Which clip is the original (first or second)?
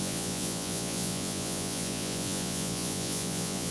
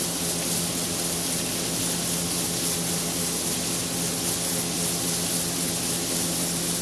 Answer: second